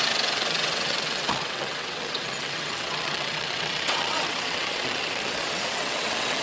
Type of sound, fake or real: fake